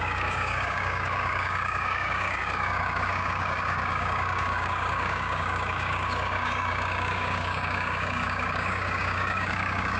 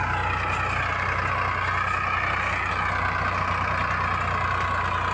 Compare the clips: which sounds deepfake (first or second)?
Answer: first